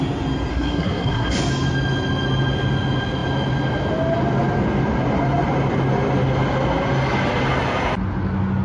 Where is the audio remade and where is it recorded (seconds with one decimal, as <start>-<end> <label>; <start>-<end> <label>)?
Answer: 0.0-0.5 recorded; 0.5-1.4 remade; 1.4-8.6 recorded